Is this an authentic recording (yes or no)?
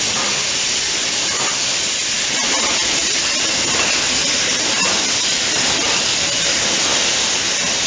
yes